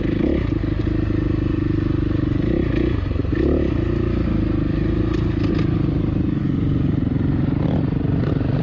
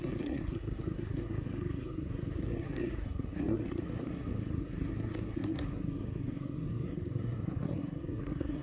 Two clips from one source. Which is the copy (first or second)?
second